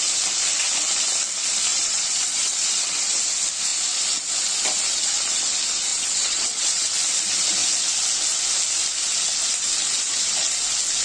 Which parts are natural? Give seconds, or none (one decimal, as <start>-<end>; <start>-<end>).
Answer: 0.0-1.7; 3.0-5.9; 6.9-11.0